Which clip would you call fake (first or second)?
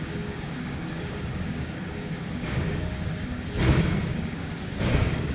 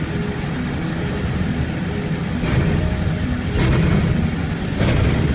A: first